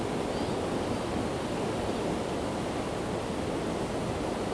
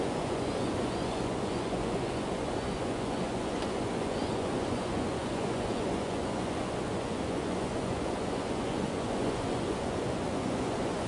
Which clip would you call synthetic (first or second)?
second